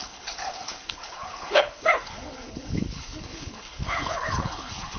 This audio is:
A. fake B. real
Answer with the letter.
A